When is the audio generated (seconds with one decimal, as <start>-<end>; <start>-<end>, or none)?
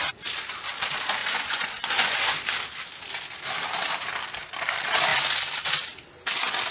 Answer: 1.2-2.2